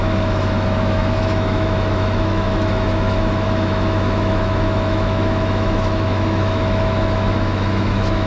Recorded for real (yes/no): no